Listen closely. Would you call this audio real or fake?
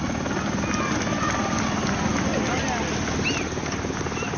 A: real